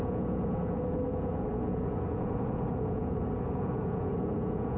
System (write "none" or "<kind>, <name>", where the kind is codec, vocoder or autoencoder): vocoder, Vocos